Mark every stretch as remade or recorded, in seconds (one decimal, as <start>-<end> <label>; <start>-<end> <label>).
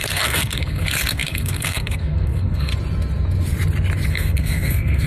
0.0-2.7 remade; 2.7-4.1 recorded; 4.1-5.1 remade